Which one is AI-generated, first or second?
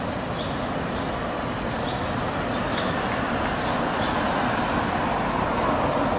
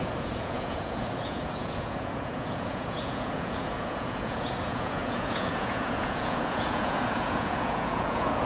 second